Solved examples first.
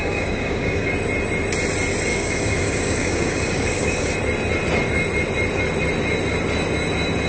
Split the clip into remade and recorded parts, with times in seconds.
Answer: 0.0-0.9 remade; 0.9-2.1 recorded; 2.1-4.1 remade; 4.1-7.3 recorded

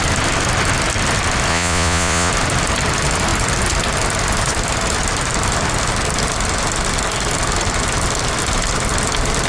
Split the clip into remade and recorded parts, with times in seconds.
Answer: 0.0-1.5 recorded; 1.5-2.3 remade; 2.3-9.5 recorded

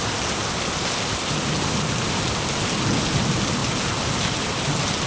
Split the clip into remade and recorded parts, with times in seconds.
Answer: 0.0-5.1 recorded

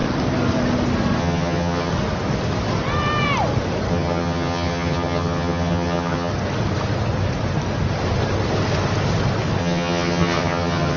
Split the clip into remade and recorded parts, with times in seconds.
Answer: 0.0-1.2 recorded; 1.2-1.9 remade; 1.9-3.9 recorded; 3.9-6.3 remade; 6.3-9.6 recorded; 9.6-11.0 remade

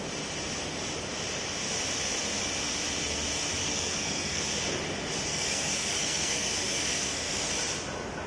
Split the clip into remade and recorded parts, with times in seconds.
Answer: 0.0-3.6 recorded; 3.6-4.4 remade; 4.4-5.3 recorded; 5.3-7.5 remade; 7.5-8.3 recorded